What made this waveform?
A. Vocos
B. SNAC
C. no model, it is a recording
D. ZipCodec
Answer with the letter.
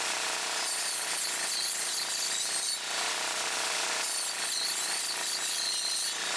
C